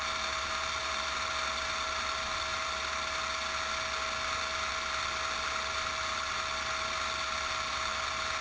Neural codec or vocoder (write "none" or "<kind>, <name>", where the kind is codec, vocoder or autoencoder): none